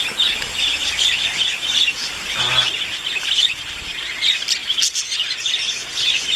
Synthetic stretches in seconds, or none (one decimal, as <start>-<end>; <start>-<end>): none